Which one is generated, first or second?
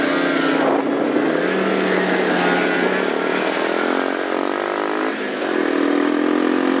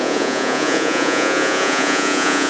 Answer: second